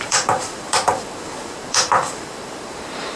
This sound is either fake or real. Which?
fake